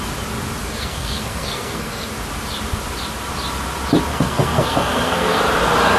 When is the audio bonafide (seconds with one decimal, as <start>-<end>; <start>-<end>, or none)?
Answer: 0.0-0.6; 2.1-4.1; 5.4-6.0